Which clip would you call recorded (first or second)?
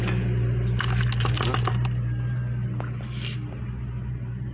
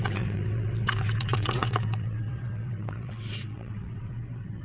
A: first